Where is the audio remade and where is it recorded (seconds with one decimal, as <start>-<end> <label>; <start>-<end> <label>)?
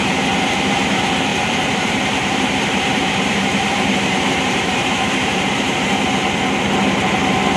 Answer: 0.0-1.3 recorded; 1.3-5.9 remade; 5.9-7.6 recorded